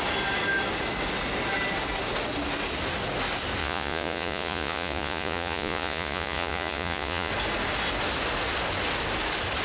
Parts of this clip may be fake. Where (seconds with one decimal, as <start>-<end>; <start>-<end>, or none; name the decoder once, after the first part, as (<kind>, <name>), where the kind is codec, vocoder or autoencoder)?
3.6-7.3 (vocoder, Vocos)